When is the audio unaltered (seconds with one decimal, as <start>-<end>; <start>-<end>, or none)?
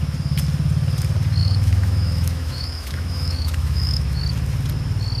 0.0-1.4; 4.2-5.2